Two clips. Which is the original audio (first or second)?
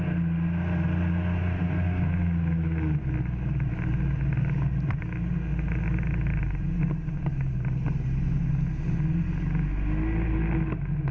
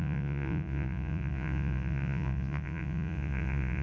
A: first